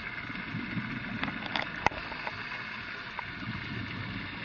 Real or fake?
real